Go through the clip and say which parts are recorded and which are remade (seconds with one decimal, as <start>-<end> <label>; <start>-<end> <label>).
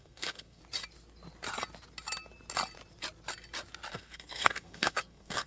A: 0.0-0.6 remade; 0.6-3.9 recorded; 3.9-5.5 remade